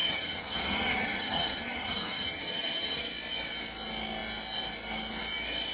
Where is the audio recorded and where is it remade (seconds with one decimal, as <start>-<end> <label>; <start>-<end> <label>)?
0.0-3.0 remade; 3.0-5.7 recorded